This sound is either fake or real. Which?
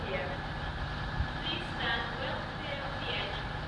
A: real